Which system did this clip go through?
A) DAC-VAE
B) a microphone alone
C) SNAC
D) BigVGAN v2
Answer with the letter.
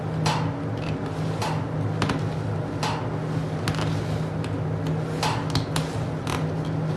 B